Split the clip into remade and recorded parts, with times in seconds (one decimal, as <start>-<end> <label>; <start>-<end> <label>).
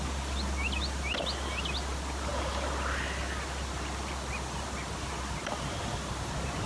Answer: 0.0-6.7 recorded